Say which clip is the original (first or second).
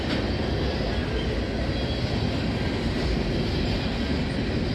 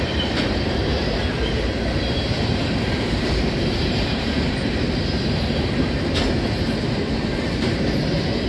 first